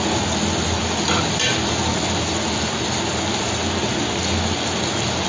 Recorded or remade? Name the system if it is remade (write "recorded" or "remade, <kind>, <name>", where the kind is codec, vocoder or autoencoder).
recorded